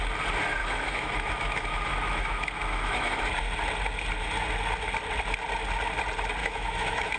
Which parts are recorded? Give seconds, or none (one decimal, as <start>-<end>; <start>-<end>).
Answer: 0.0-0.6; 3.2-6.4